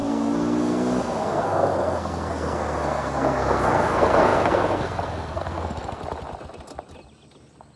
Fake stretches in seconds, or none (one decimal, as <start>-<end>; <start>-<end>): 0.0-6.0